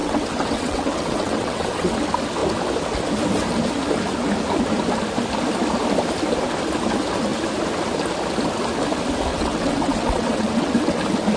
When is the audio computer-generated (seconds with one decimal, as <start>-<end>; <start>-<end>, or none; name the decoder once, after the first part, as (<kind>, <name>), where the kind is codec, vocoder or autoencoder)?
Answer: 0.0-2.0 (vocoder, WaveNeXt); 9.3-11.0